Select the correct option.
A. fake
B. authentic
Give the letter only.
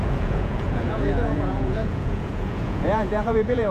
A